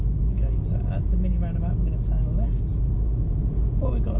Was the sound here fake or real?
real